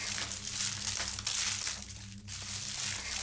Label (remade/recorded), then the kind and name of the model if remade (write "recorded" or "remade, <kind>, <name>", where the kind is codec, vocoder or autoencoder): recorded